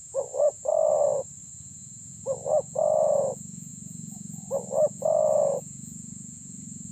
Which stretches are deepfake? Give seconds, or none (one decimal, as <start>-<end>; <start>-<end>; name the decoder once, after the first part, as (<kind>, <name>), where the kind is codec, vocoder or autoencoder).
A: 0.0-0.7 (vocoder, Vocos); 1.5-6.9